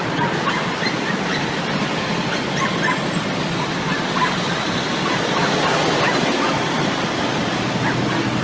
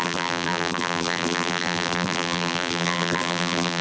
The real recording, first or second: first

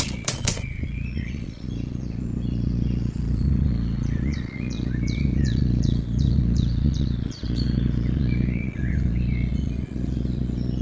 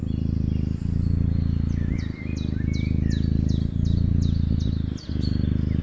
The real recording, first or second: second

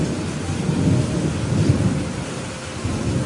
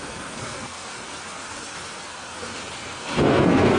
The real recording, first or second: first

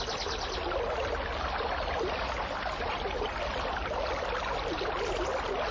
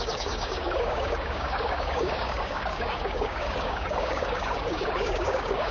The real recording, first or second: first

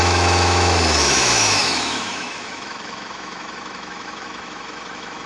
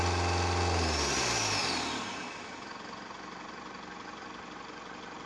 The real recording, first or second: second